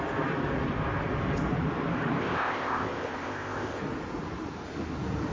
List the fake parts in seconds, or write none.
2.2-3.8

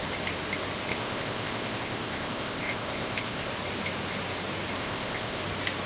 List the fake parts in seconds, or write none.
0.9-3.5; 4.8-5.4

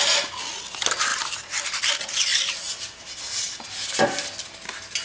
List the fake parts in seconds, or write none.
none